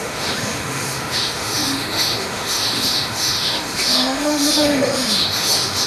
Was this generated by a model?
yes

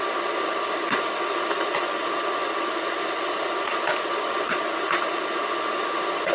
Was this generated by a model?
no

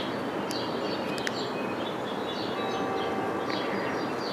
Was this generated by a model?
no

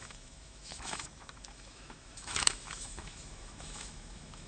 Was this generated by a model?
yes